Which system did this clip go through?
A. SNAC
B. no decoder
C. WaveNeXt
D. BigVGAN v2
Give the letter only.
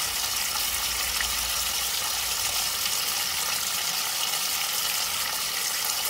B